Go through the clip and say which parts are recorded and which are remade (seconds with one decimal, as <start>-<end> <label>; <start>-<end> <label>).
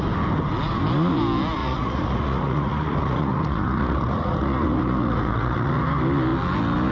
0.0-1.6 recorded; 1.6-5.7 remade; 5.7-6.9 recorded